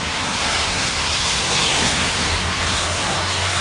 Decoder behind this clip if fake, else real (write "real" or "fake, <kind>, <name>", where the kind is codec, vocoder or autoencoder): fake, codec, SNAC